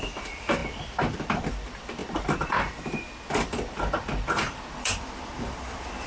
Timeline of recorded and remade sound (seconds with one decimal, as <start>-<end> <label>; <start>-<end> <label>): 0.0-6.1 remade